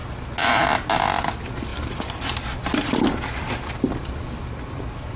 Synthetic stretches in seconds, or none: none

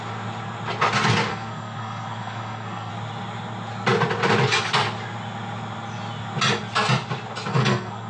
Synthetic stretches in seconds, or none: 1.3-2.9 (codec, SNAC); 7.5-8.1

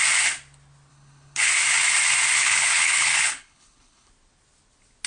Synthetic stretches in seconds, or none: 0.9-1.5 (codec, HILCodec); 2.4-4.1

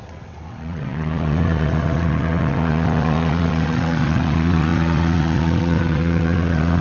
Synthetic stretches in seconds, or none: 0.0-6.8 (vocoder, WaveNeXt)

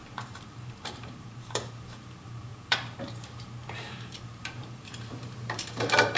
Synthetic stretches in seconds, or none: 0.0-6.2 (vocoder, BigVGAN v2)